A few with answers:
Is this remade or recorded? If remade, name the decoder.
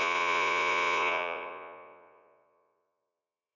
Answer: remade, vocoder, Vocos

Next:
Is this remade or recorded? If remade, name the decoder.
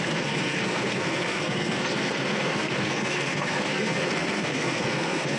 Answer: remade, codec, SNAC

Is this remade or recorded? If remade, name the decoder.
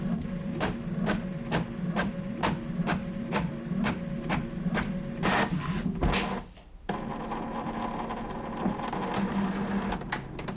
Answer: recorded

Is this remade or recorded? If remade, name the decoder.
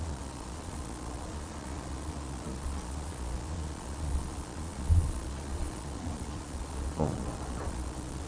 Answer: remade, vocoder, Vocos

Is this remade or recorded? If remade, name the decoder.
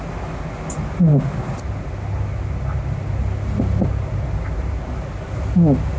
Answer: recorded